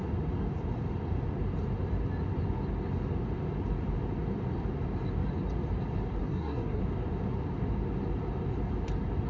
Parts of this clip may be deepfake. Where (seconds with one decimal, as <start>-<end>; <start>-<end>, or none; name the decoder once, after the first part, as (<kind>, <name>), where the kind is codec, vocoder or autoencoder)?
6.2-6.8 (codec, SNAC)